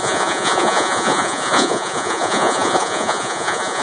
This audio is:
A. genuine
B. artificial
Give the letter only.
B